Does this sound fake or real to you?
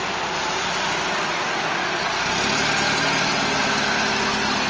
real